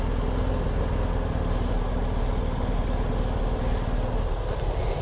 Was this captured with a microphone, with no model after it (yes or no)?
yes